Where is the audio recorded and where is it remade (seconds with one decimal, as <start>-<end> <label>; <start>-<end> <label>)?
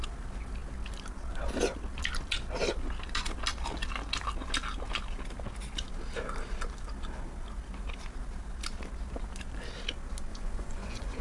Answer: 0.0-10.3 recorded; 10.3-11.2 remade